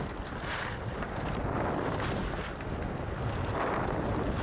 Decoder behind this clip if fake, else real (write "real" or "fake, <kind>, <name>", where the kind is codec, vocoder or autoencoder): real